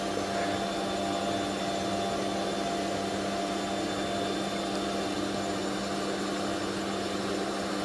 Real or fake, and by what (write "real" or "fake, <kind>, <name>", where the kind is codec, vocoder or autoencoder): real